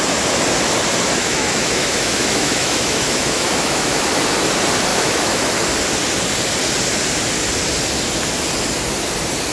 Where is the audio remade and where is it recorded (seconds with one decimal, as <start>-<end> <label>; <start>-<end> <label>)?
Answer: 0.0-1.2 recorded; 1.2-4.0 remade; 4.0-4.9 recorded; 4.9-5.5 remade; 5.5-9.5 recorded